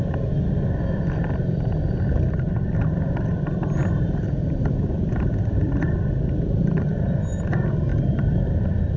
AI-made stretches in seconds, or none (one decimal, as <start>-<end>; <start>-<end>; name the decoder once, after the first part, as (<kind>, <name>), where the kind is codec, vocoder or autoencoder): 3.8-6.6 (vocoder, BigVGAN v2); 7.9-8.5